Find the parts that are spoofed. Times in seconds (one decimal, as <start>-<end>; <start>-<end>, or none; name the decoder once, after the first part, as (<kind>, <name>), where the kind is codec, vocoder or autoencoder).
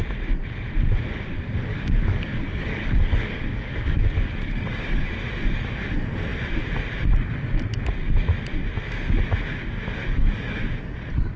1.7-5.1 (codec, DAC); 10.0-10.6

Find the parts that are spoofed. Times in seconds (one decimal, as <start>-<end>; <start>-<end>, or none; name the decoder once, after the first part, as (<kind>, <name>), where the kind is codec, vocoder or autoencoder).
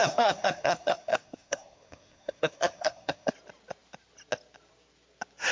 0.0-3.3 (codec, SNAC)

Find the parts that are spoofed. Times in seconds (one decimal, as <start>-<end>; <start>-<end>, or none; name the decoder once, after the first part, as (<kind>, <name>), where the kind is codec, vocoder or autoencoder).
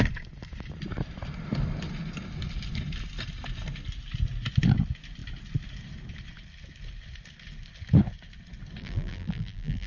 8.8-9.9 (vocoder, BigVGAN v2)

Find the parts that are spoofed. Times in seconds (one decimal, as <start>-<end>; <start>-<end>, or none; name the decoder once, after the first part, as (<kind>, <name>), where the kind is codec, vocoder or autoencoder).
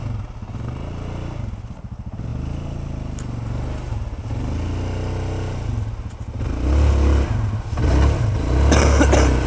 none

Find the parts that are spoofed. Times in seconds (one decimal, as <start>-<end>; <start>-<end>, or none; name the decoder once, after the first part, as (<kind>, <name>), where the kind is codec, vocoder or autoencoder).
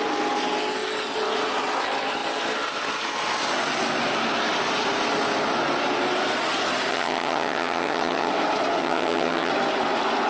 6.9-8.3 (vocoder, HiFi-GAN); 8.8-9.5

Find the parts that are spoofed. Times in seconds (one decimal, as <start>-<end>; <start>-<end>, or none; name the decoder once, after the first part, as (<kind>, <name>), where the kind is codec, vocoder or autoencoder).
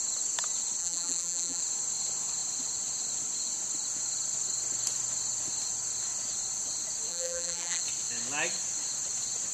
0.8-1.6 (vocoder, BigVGAN v2); 7.1-7.8